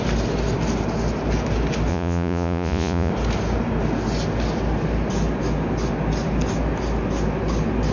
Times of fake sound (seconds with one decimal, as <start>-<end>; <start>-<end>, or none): 1.9-3.1